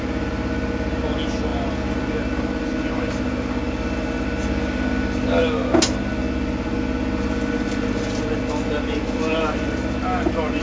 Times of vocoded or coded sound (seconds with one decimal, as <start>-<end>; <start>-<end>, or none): none